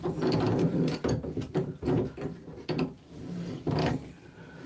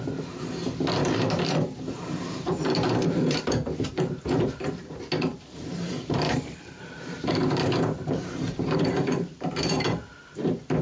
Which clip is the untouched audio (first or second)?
first